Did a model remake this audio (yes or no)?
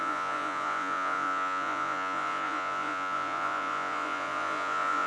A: yes